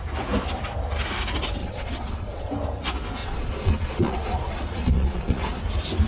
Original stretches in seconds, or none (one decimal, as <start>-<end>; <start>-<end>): 0.0-1.6; 2.5-3.2; 5.6-6.1